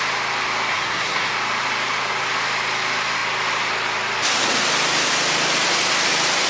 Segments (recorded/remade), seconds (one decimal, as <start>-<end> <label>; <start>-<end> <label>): 0.0-0.7 recorded; 0.7-1.3 remade; 1.3-6.5 recorded